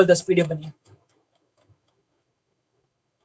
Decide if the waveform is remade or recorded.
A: remade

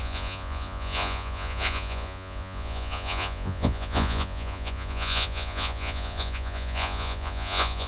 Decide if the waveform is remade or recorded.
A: remade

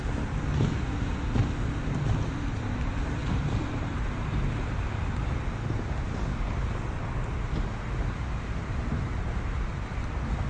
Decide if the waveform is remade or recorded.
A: recorded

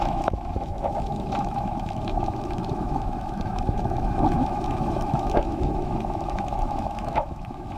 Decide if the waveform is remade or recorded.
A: remade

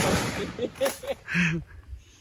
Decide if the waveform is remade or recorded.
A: recorded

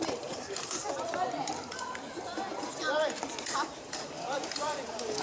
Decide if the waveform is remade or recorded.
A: remade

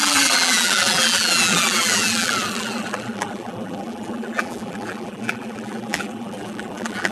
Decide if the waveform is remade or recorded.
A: remade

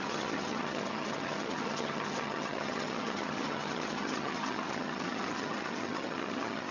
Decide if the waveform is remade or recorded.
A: remade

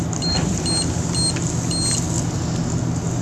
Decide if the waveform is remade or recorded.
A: recorded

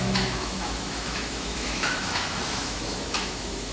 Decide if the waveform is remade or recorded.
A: remade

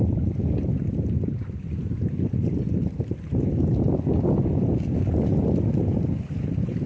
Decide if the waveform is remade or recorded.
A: recorded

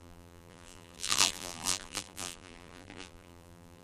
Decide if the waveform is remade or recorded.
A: remade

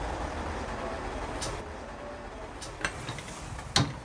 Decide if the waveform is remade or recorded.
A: recorded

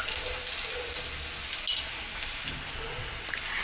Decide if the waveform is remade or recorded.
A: recorded